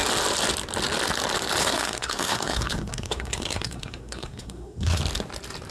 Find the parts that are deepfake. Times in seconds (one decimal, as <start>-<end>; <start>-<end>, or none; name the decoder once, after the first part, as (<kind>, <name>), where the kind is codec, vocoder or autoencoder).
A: 1.6-5.0 (codec, SNAC)